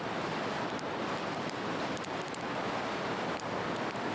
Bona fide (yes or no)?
yes